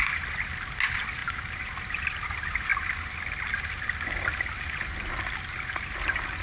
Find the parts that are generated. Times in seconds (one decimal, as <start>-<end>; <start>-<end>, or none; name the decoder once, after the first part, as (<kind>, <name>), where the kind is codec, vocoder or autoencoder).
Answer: 1.2-2.2 (vocoder, BigVGAN v2)